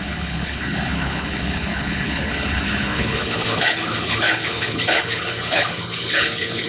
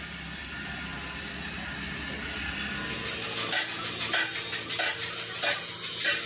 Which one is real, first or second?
second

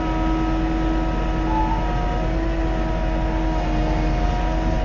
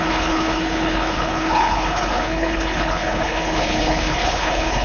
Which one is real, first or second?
first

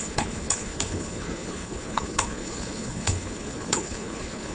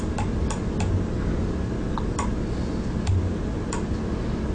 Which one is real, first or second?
second